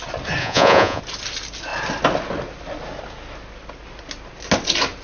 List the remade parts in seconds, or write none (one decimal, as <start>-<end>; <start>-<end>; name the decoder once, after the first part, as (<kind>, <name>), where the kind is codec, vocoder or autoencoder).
0.4-1.0 (vocoder, Vocos)